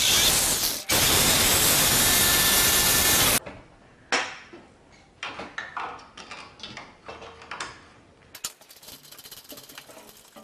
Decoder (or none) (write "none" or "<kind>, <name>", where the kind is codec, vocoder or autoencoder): none